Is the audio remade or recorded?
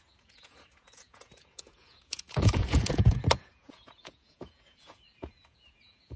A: remade